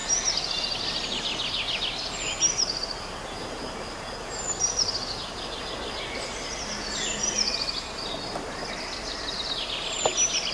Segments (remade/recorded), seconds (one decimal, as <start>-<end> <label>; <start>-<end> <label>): 0.0-10.5 recorded